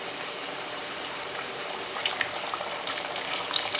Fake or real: fake